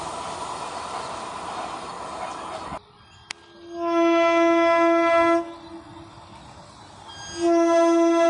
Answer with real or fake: real